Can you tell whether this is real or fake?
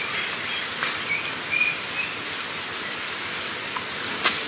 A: real